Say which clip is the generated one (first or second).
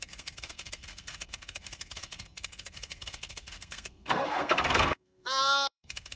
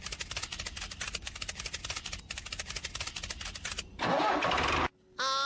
first